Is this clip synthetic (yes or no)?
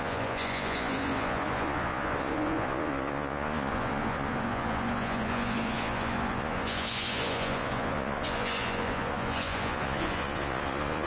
yes